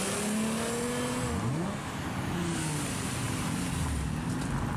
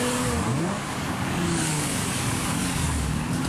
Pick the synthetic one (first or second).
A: second